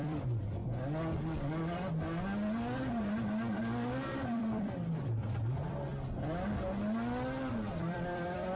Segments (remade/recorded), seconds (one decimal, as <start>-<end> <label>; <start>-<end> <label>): 0.0-0.6 remade; 0.6-3.6 recorded; 3.6-5.9 remade; 5.9-7.7 recorded; 7.7-8.6 remade